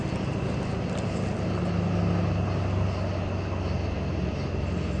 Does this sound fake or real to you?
real